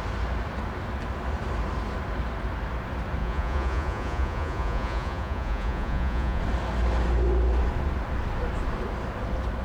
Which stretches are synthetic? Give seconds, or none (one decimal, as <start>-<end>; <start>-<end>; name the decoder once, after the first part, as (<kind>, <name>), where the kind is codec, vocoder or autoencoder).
3.2-6.4 (vocoder, Vocos)